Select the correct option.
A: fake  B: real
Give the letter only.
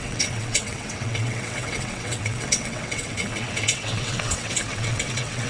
A